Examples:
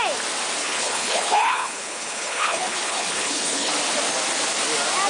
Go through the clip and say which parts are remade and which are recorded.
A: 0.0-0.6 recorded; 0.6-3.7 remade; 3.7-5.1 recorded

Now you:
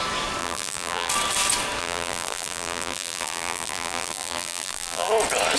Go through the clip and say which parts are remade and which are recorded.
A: 0.0-0.4 recorded; 0.4-1.1 remade; 1.1-1.8 recorded; 1.8-5.1 remade; 5.1-5.6 recorded

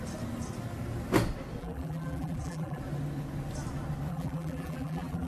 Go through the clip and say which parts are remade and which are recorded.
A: 0.0-1.6 recorded; 1.6-2.8 remade; 2.8-4.1 recorded; 4.1-5.3 remade